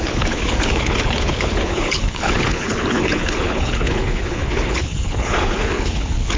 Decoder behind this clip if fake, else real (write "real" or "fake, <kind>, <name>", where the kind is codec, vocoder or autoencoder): fake, codec, HILCodec